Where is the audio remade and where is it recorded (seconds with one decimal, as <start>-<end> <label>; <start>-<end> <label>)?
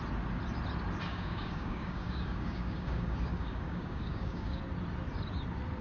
0.0-1.1 recorded; 1.1-4.6 remade; 4.6-5.8 recorded